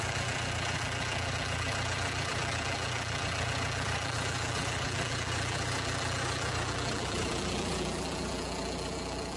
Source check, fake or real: fake